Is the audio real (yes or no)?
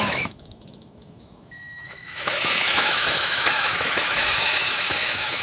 no